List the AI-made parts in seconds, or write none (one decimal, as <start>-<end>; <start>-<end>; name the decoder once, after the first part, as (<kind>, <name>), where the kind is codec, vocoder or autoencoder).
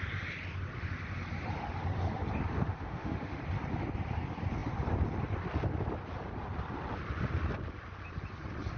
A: 2.7-3.4 (autoencoder, DAC-VAE)